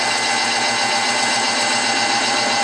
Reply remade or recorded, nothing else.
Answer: recorded